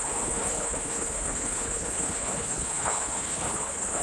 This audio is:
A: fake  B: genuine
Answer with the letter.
A